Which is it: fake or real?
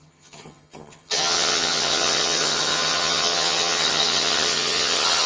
fake